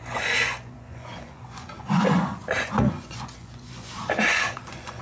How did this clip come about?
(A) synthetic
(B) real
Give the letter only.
A